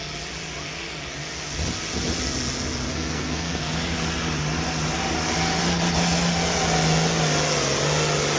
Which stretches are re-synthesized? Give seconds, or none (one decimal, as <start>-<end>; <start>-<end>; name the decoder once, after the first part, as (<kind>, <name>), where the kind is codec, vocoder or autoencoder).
2.9-3.6 (codec, SNAC)